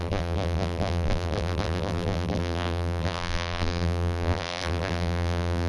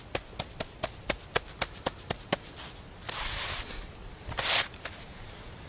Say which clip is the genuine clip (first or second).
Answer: second